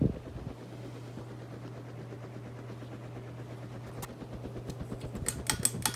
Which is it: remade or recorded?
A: recorded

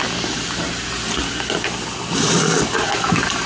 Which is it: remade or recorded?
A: recorded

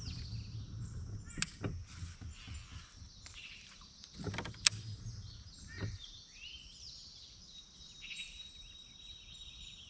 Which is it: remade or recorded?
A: recorded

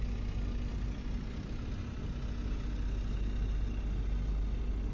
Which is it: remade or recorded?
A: recorded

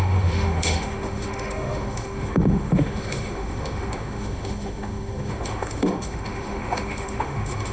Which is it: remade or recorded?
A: remade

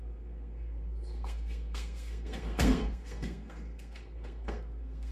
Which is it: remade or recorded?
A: remade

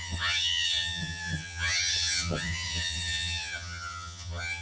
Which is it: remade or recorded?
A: remade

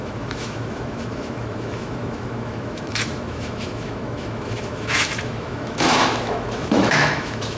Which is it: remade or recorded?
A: remade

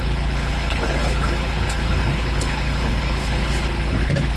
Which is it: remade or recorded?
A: remade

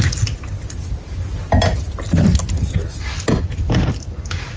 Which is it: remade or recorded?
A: recorded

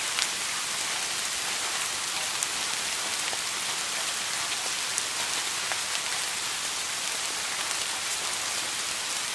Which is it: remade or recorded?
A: recorded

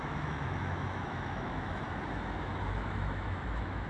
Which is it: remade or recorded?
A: remade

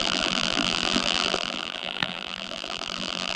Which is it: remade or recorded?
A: remade